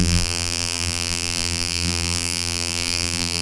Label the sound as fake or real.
fake